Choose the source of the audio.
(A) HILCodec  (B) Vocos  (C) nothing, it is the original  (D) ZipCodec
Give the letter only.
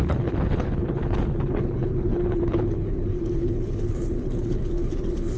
A